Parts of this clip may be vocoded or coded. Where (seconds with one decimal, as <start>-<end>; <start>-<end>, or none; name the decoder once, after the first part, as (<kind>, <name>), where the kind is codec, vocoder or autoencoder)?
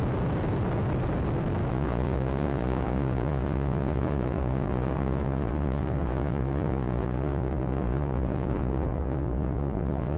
1.7-10.2 (vocoder, Vocos)